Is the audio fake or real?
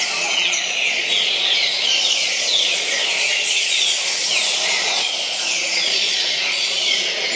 fake